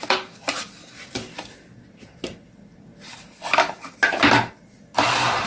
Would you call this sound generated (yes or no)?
no